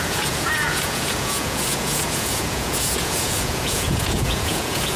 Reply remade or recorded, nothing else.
remade